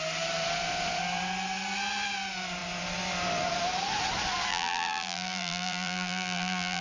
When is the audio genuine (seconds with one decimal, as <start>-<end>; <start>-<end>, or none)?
0.0-4.5